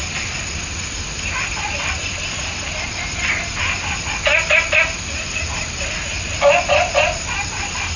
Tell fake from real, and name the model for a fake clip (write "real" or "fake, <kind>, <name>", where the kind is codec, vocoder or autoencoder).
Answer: real